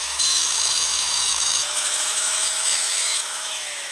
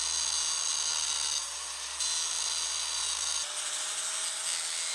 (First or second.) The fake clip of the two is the first